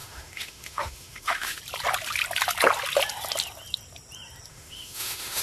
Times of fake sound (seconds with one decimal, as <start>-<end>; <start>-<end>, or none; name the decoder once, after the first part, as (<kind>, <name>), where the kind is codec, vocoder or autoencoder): 0.0-1.6 (autoencoder, DAC-VAE); 4.5-5.4